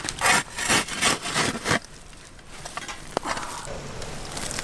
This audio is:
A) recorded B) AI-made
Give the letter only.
A